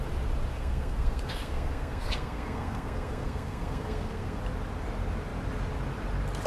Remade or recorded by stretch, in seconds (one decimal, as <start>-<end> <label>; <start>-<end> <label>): 0.0-0.5 recorded; 0.5-4.4 remade; 4.4-6.5 recorded